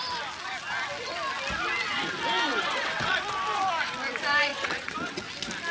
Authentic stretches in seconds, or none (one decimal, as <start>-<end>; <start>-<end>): 0.0-2.5; 3.2-4.5; 5.3-5.7